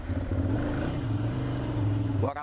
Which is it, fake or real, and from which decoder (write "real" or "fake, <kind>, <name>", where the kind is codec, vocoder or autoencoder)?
fake, vocoder, BigVGAN v2